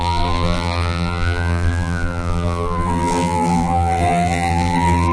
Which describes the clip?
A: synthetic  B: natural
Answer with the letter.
A